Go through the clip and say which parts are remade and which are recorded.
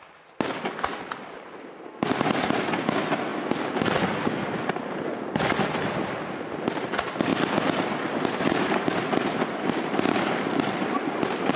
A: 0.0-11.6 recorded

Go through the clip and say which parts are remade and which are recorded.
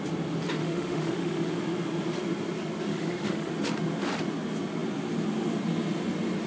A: 0.0-0.6 recorded; 0.6-1.5 remade; 1.5-2.9 recorded; 2.9-3.5 remade; 3.5-6.5 recorded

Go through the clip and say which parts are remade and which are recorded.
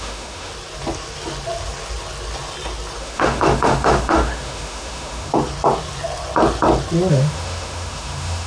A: 0.0-0.5 remade; 0.5-3.0 recorded; 3.0-5.3 remade; 5.3-7.1 recorded; 7.1-8.5 remade